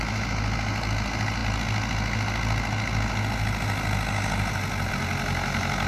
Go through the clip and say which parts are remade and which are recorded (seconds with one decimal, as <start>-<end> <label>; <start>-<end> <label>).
0.0-5.9 recorded